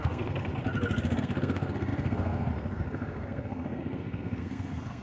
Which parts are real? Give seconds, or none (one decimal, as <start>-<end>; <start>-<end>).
0.5-1.2